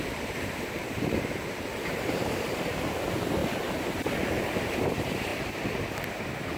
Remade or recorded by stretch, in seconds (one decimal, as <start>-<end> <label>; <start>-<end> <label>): 0.0-5.3 remade; 5.3-6.1 recorded; 6.1-6.6 remade